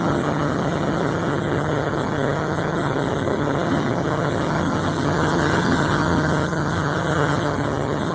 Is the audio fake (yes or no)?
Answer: yes